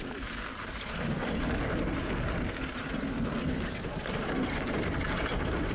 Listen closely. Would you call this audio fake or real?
real